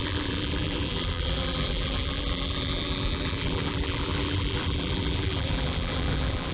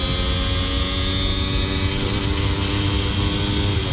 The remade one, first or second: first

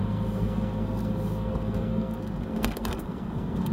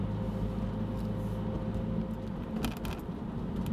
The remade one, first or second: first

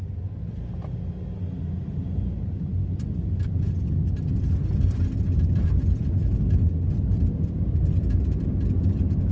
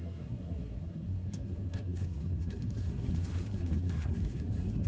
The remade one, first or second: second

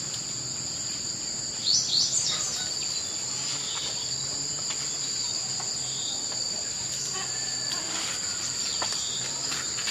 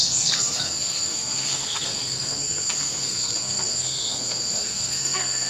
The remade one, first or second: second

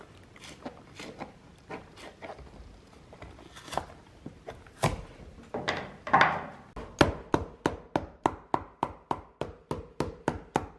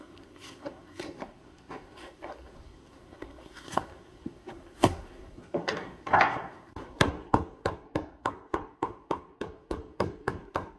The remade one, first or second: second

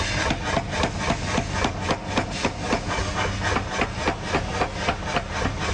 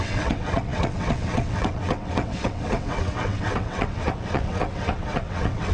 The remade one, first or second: second